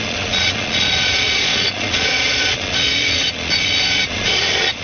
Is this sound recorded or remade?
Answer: remade